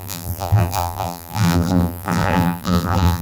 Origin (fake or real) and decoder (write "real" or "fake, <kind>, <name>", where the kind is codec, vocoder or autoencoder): fake, vocoder, BigVGAN v2